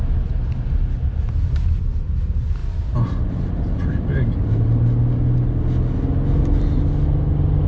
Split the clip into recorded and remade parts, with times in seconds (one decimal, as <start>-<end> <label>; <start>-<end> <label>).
0.0-7.7 recorded